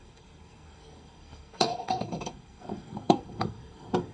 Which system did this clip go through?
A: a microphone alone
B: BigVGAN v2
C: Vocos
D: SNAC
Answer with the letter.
D